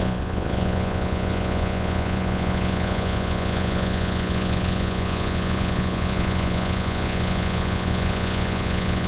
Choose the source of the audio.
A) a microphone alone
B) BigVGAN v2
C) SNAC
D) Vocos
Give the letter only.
D